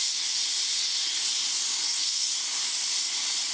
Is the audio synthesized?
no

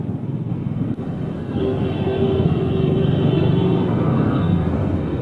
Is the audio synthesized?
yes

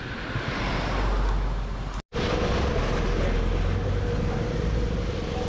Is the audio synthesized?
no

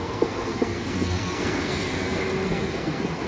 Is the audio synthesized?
yes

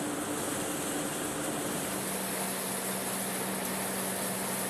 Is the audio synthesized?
no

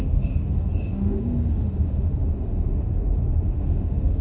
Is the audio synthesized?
yes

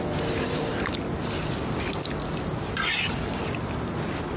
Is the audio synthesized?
no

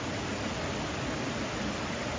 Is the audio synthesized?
no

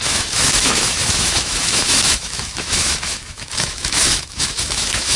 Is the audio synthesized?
yes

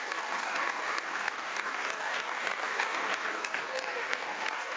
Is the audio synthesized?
yes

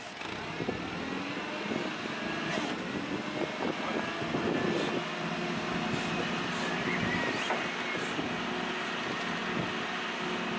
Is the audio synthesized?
no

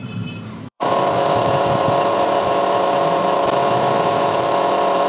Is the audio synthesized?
yes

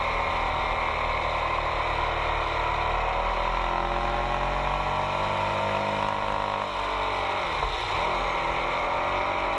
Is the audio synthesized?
no